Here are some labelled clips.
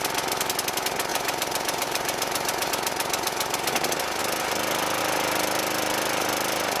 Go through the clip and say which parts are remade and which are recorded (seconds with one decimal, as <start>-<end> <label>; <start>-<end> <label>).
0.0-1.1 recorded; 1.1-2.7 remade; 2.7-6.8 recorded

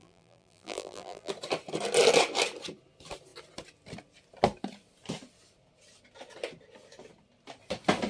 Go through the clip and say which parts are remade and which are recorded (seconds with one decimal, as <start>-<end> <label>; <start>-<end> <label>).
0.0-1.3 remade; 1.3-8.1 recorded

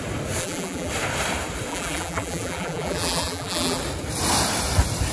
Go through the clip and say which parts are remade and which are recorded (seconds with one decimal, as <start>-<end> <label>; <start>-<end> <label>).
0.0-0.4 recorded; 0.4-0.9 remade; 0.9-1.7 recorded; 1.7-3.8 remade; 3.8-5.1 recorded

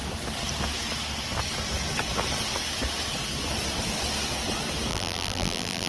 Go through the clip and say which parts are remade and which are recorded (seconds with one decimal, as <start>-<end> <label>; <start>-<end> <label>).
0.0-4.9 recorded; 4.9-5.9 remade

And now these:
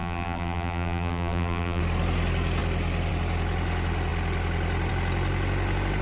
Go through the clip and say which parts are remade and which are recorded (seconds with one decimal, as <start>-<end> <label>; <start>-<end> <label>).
0.0-1.8 remade; 1.8-6.0 recorded

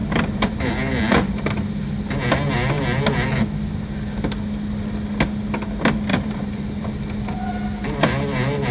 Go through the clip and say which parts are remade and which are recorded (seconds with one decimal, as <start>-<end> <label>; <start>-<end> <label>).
0.0-0.7 remade; 0.7-6.1 recorded; 6.1-7.0 remade; 7.0-8.7 recorded

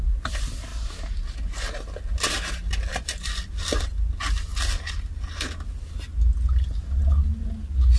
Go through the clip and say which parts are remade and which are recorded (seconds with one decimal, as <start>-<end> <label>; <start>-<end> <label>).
0.0-2.9 recorded; 2.9-4.1 remade; 4.1-8.0 recorded

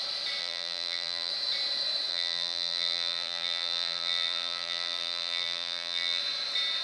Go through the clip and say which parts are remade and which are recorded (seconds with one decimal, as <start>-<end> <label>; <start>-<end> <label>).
0.0-0.4 recorded; 0.4-1.3 remade; 1.3-2.1 recorded; 2.1-6.2 remade; 6.2-6.8 recorded